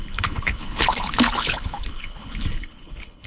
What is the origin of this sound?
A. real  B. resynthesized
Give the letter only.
B